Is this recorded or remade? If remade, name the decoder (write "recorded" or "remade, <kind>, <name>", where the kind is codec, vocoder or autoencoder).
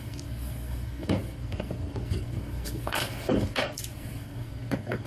remade, codec, SNAC